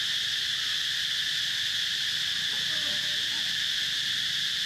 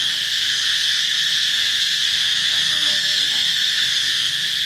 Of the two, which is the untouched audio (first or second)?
first